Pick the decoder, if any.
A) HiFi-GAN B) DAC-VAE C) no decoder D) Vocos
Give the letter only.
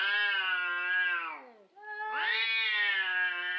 C